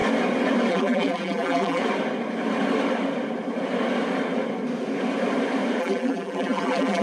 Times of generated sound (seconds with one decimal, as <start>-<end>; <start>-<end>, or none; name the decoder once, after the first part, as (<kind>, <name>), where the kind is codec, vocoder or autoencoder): 0.7-1.8 (vocoder, BigVGAN v2); 5.8-7.0